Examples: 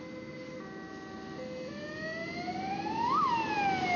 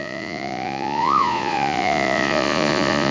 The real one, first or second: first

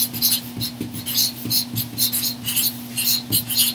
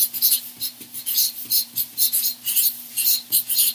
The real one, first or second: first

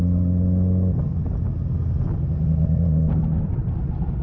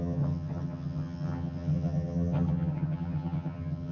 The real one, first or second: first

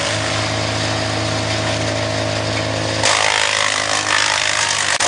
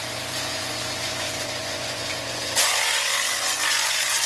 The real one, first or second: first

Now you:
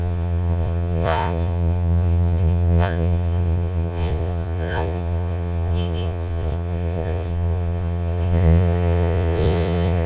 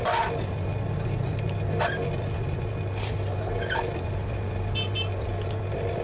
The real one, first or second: second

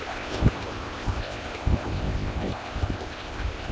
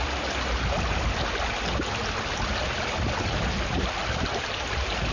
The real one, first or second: second